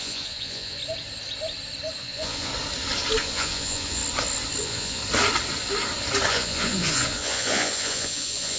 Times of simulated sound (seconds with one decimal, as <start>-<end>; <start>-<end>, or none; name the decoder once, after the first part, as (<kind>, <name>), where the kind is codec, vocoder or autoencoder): 0.0-0.8 (vocoder, Vocos); 2.0-2.5; 3.2-4.0; 4.6-5.0; 6.3-8.6